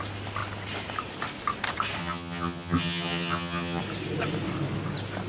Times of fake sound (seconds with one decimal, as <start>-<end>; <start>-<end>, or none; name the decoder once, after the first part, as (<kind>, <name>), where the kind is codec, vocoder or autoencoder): 2.0-3.8 (vocoder, HiFi-GAN)